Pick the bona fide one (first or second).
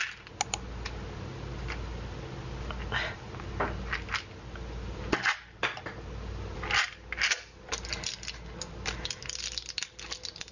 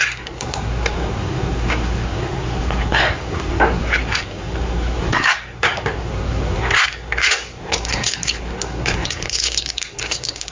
first